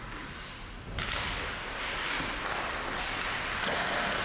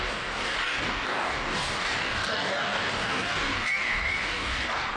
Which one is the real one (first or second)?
first